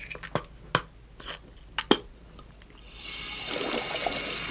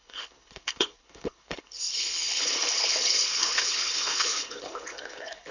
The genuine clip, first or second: first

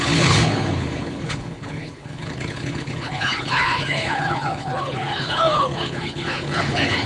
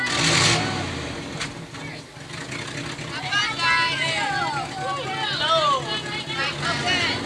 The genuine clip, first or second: second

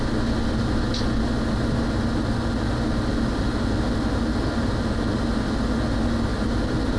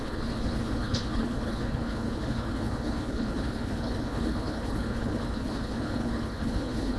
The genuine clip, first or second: first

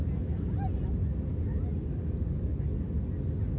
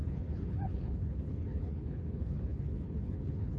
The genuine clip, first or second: first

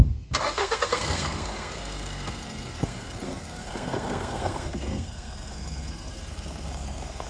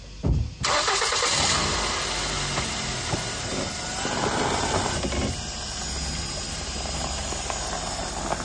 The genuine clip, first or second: second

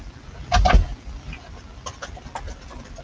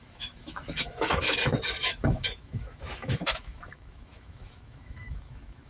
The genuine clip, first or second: first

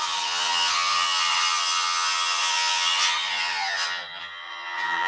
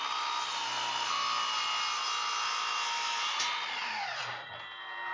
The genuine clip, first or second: second